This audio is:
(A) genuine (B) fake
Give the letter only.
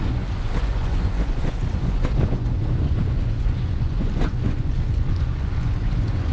B